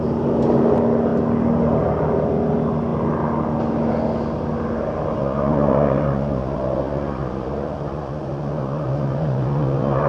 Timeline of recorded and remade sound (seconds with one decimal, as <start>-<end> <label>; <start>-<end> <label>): 0.0-5.2 recorded; 5.2-10.1 remade